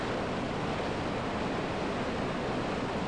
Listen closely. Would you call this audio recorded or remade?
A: recorded